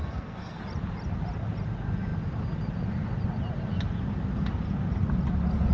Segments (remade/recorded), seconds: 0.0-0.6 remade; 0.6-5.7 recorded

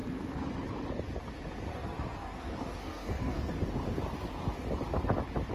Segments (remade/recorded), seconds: 0.0-1.7 recorded; 1.7-3.5 remade; 3.5-5.5 recorded